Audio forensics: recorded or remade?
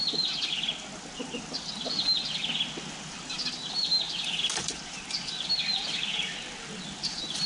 recorded